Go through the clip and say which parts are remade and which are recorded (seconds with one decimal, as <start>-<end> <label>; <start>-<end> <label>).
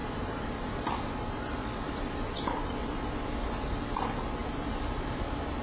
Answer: 0.0-3.4 remade; 3.4-4.4 recorded; 4.4-5.6 remade